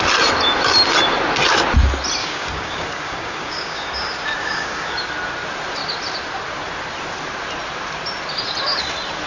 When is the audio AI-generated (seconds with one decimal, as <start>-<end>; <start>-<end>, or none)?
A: 2.2-3.9; 4.4-5.1